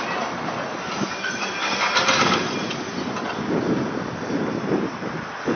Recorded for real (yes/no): yes